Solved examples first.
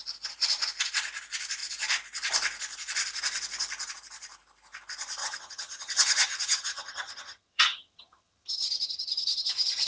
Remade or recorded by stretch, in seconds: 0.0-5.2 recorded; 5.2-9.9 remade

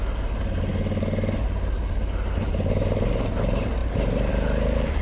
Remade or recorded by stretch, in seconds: 0.0-5.0 recorded

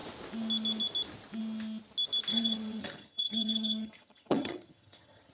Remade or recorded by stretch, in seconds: 0.0-2.3 recorded; 2.3-5.3 remade